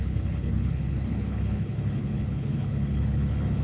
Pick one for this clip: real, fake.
fake